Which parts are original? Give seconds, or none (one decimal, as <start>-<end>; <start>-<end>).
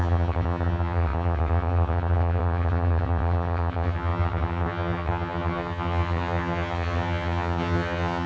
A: none